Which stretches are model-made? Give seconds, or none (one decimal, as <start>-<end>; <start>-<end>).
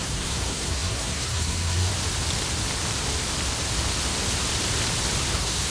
0.0-1.9; 5.3-5.7